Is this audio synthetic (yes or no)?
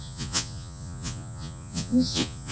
yes